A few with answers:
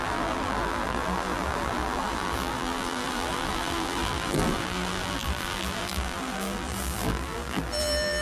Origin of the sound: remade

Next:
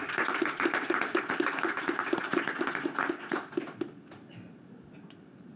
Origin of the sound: recorded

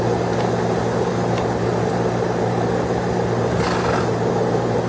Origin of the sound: recorded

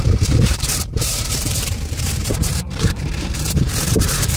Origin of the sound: remade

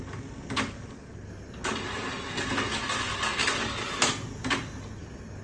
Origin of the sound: recorded